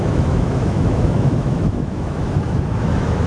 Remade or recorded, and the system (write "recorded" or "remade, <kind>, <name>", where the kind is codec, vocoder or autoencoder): remade, autoencoder, DAC-VAE